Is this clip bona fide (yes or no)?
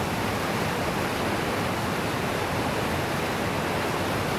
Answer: yes